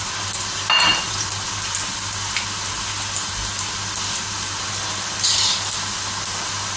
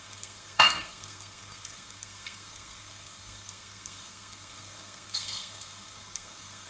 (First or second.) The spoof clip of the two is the second